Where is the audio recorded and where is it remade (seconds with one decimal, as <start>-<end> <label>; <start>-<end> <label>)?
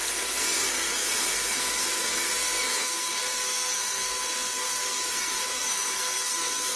0.0-6.8 remade